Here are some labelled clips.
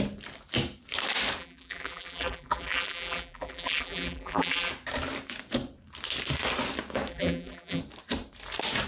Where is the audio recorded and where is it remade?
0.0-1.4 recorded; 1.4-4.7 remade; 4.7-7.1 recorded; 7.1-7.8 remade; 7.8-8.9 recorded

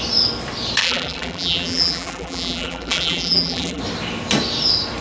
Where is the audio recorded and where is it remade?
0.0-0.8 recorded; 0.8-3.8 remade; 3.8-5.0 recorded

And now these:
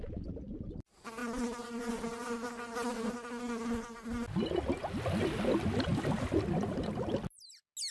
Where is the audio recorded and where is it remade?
0.0-7.9 recorded

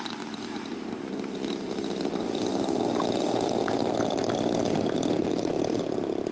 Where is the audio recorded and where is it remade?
0.0-5.2 recorded; 5.2-6.3 remade